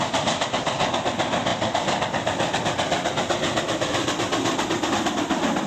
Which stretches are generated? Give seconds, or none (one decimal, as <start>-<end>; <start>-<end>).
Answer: none